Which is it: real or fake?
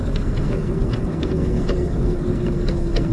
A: fake